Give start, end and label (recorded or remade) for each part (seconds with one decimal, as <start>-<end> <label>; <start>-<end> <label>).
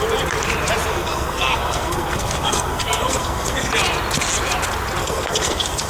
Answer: 0.0-0.9 recorded; 0.9-3.7 remade; 3.7-5.0 recorded; 5.0-5.9 remade